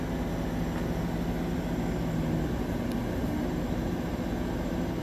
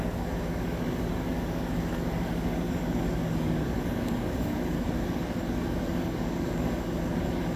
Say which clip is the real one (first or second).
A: first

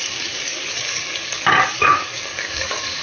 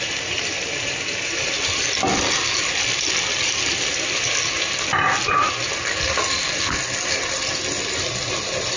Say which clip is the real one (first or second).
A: second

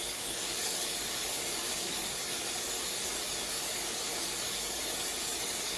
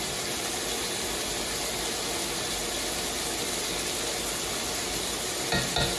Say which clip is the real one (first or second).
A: second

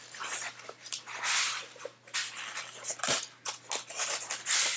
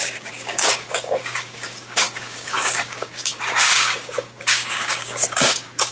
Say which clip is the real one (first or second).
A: first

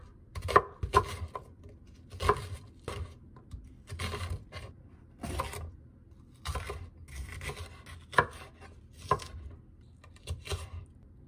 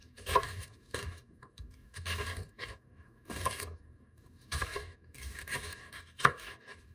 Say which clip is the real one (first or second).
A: first